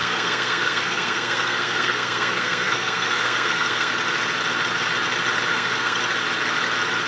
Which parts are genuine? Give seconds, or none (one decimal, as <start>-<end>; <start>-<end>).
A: 3.9-5.5; 6.0-7.1